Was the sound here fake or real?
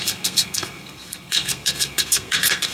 fake